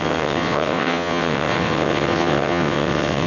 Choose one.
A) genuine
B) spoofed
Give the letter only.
B